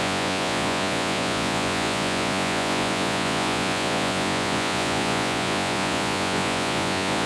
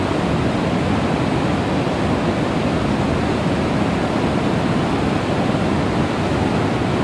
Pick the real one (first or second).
second